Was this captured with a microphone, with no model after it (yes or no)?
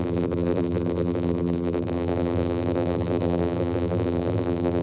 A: no